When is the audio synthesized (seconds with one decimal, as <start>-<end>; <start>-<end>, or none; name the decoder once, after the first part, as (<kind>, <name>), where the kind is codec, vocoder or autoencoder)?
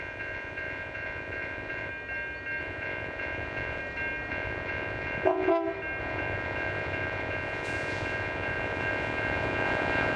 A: 0.0-1.9 (vocoder, Vocos); 2.6-3.8; 4.3-5.5; 6.0-10.2